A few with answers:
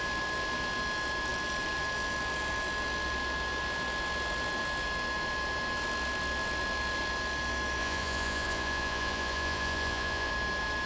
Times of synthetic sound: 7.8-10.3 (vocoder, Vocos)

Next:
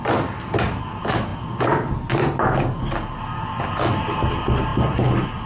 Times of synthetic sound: none

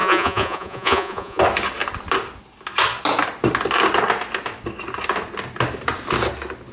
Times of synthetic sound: 0.0-1.4 (vocoder, Vocos)

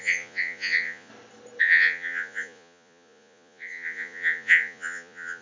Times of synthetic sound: 0.0-1.1 (vocoder, Vocos); 1.6-5.4

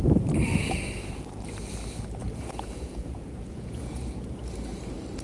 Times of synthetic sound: 2.2-4.3 (vocoder, Vocos)